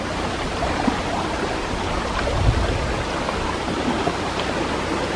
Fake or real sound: real